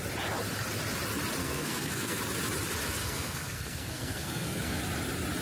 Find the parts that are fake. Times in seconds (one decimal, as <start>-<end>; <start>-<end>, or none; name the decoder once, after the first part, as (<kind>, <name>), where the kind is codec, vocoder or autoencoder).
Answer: 1.4-2.2 (codec, SNAC); 3.0-4.8